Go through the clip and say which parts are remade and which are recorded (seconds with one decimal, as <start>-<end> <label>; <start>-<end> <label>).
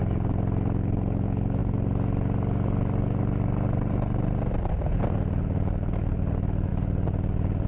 0.0-7.7 recorded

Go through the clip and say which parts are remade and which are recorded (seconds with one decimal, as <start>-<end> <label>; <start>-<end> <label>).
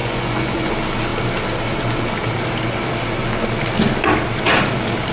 0.0-0.7 remade; 0.7-5.1 recorded